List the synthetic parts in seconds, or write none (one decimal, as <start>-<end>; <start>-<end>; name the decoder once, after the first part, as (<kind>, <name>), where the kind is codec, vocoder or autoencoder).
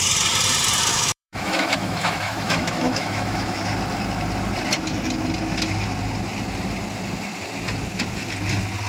0.9-3.6 (autoencoder, DAC-VAE)